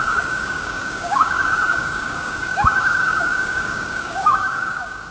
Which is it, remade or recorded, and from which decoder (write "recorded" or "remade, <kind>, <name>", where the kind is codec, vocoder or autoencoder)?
remade, codec, DAC